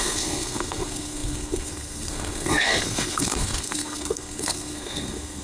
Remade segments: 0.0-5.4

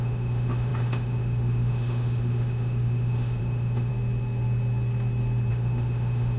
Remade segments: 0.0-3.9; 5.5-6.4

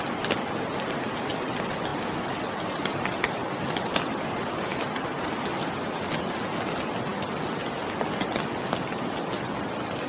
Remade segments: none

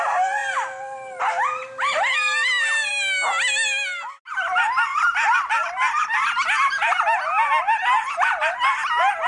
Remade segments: none

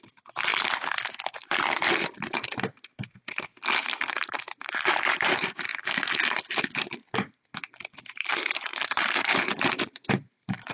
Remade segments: 0.0-0.5; 4.1-5.7; 8.2-10.7

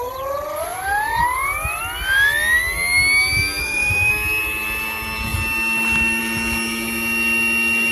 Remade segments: 3.6-4.1

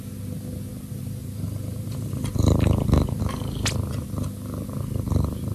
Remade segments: 1.2-3.2

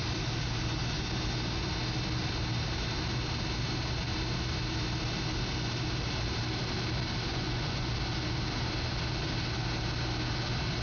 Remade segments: 7.3-7.9